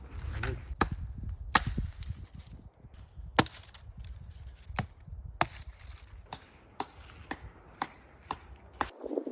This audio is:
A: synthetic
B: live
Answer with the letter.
B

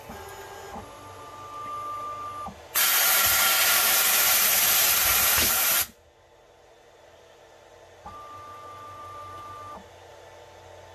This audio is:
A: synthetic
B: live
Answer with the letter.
B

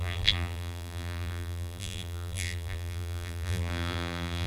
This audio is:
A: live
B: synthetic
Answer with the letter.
B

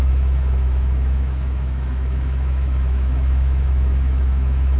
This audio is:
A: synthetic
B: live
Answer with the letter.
A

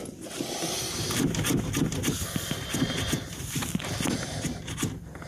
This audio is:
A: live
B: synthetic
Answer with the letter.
A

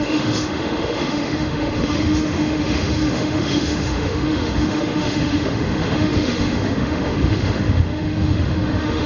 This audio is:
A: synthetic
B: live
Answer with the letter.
A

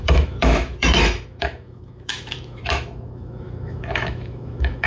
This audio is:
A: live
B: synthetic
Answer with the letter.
B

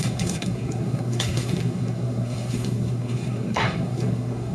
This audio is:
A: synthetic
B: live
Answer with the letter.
A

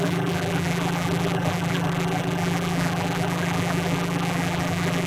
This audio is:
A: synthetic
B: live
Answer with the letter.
A